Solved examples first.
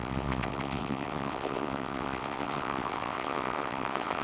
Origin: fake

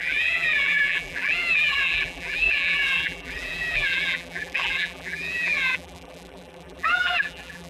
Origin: fake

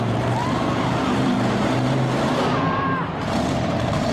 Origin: fake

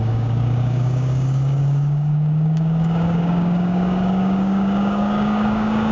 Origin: fake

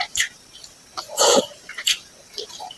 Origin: fake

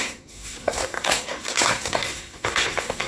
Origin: fake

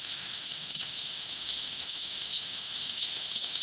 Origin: fake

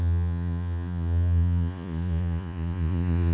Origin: fake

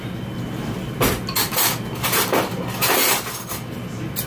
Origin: real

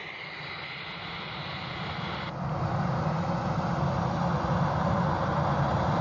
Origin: fake